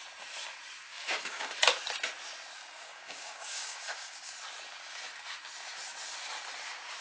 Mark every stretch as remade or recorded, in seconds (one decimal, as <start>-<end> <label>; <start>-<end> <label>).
0.0-0.9 recorded; 0.9-1.5 remade; 1.5-2.6 recorded; 2.6-4.3 remade; 4.3-7.0 recorded